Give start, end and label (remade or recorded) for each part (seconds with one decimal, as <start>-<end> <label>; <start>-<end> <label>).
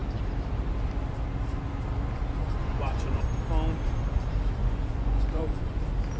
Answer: 0.0-2.6 recorded; 2.6-3.2 remade; 3.2-4.6 recorded; 4.6-5.8 remade; 5.8-6.2 recorded